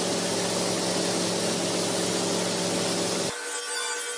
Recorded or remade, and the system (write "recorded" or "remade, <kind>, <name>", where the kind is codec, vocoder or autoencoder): recorded